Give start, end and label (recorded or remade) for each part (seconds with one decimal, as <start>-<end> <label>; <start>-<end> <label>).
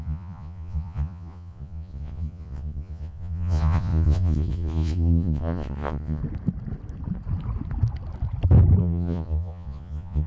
0.0-6.2 remade; 6.2-8.8 recorded; 8.8-10.3 remade